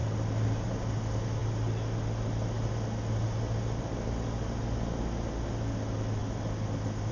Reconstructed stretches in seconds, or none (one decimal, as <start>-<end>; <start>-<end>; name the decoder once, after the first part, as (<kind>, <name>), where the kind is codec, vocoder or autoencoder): none